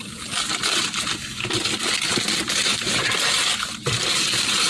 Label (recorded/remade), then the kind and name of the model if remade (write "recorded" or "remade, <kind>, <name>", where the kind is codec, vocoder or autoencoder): recorded